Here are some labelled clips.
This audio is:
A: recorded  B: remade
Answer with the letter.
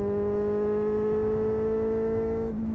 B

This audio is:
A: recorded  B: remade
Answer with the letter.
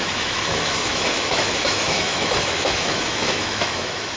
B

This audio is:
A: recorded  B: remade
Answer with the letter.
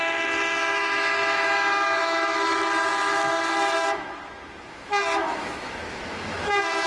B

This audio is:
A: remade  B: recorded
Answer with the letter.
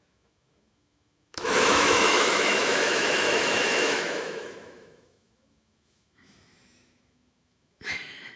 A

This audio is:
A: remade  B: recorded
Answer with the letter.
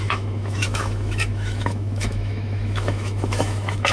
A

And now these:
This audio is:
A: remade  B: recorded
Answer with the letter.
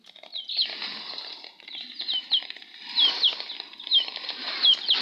B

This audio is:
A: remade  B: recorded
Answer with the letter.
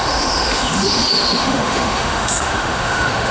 A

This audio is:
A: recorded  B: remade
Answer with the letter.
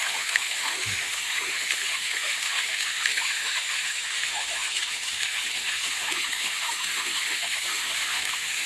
B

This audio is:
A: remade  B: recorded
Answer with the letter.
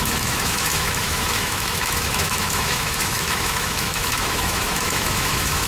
A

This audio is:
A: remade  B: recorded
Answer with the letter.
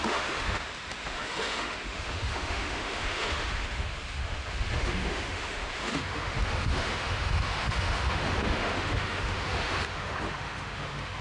A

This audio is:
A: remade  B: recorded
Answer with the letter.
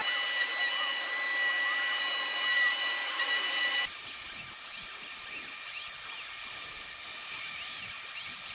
B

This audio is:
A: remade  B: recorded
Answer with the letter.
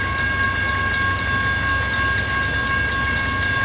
B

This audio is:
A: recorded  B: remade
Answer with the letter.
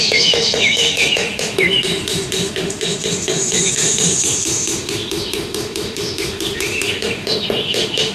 B